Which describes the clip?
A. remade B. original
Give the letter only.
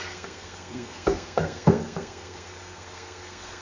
A